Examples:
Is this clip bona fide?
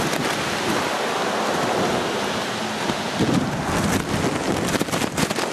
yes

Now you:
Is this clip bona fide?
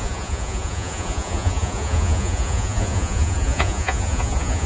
no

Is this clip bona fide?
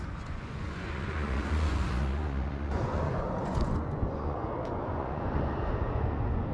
no